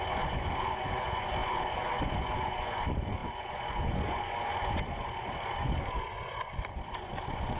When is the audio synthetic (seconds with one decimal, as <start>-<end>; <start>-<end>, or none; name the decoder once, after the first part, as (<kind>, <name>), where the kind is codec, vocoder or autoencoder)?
0.0-7.6 (vocoder, Vocos)